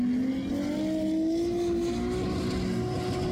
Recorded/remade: recorded